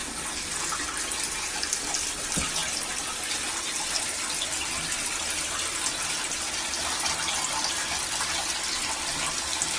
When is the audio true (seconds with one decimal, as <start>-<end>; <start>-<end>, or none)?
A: 0.0-1.3; 2.6-6.2